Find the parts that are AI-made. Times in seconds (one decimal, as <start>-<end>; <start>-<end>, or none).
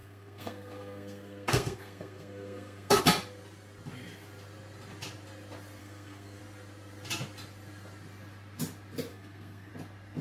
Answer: 0.0-3.0; 5.8-6.4; 9.1-9.7